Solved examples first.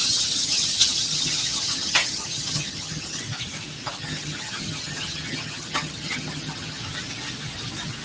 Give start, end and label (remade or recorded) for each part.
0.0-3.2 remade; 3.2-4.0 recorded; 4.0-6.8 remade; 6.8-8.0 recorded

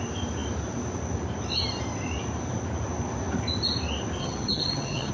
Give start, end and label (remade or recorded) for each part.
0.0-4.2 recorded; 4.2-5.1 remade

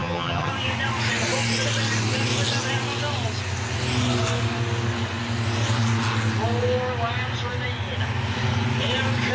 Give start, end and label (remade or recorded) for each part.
0.0-0.5 remade; 0.5-9.3 recorded

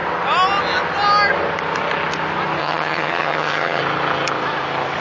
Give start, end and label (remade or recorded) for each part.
0.0-2.6 recorded; 2.6-3.8 remade; 3.8-5.0 recorded

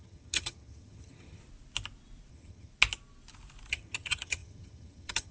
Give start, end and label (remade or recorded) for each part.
0.0-1.4 remade; 1.4-2.3 recorded; 2.3-2.7 remade; 2.7-3.7 recorded; 3.7-5.3 remade

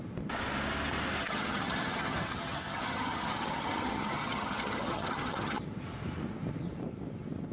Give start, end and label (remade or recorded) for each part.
0.0-1.2 recorded; 1.2-5.6 remade; 5.6-7.5 recorded

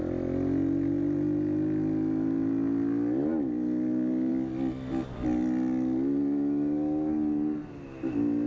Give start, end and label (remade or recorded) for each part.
0.0-8.5 recorded

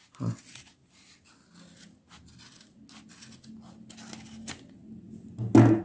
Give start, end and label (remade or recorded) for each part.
0.0-5.8 recorded